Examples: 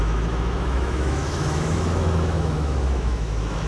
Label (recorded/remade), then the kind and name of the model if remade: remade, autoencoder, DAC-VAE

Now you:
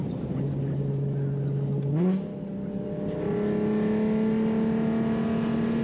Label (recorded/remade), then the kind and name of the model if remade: recorded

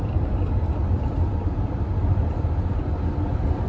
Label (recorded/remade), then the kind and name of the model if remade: recorded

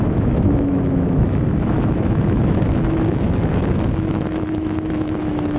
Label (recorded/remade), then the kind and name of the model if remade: remade, autoencoder, DAC-VAE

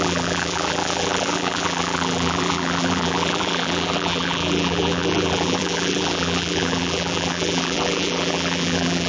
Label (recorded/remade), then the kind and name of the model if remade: remade, vocoder, BigVGAN v2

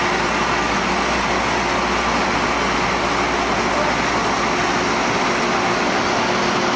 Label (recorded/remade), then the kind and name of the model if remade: recorded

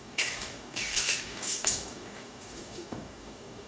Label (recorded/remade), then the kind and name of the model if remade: remade, codec, DAC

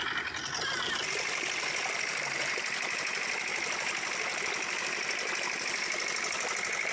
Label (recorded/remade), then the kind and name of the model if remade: recorded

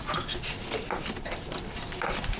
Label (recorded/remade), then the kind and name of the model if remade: recorded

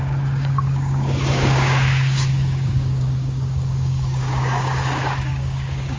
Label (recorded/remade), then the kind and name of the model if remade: remade, codec, DAC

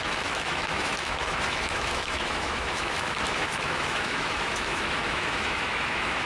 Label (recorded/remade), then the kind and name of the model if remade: remade, autoencoder, DAC-VAE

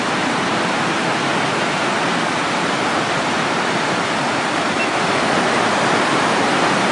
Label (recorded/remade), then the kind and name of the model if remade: recorded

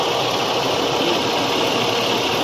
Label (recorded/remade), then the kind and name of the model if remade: recorded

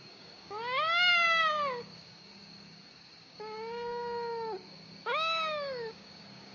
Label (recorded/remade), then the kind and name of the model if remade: remade, codec, DAC